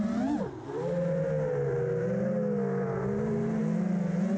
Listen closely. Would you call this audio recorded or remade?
recorded